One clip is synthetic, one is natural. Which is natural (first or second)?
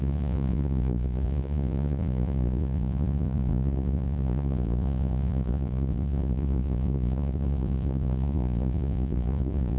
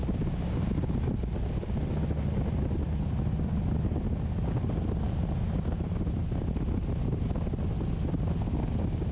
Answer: second